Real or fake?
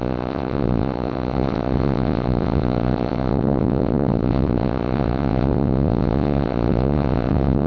fake